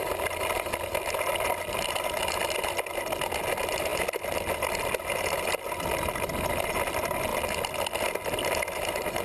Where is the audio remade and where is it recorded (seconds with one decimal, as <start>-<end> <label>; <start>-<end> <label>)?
0.0-9.2 recorded